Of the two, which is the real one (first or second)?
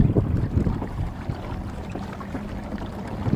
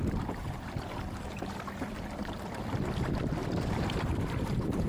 first